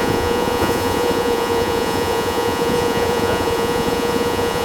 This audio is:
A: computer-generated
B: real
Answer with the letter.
A